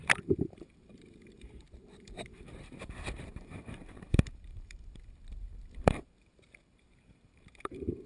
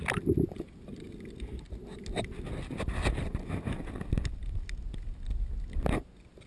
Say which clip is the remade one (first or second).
first